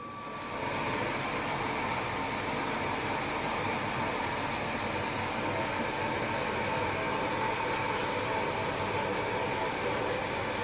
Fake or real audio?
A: real